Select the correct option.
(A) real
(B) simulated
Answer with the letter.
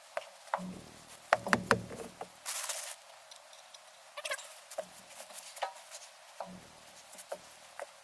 A